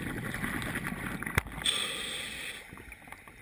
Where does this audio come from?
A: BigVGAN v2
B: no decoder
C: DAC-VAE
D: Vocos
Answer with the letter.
B